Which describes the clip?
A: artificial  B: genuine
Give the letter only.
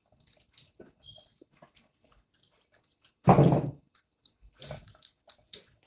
B